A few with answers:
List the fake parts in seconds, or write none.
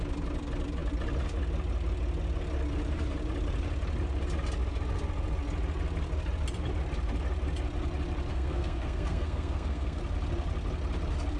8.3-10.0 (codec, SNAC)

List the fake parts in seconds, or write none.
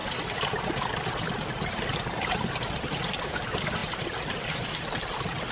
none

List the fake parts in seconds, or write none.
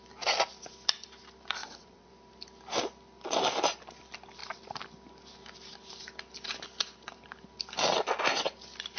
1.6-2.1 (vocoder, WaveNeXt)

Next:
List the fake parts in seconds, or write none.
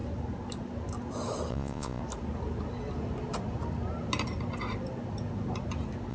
1.5-2.0 (vocoder, Vocos)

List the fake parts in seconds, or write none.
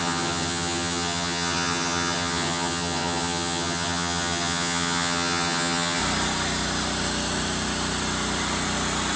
0.0-6.0 (vocoder, HiFi-GAN)